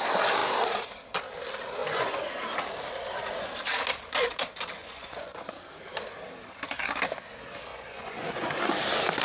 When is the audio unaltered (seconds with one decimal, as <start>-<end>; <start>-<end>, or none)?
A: 0.0-1.8; 2.3-4.8; 5.5-7.7; 8.5-9.2